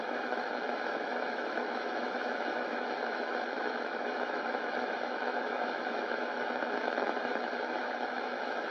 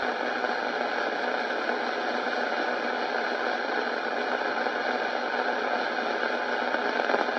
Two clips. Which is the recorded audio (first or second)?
second